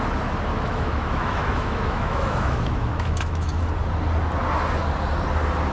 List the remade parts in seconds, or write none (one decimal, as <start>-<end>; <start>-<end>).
0.5-3.6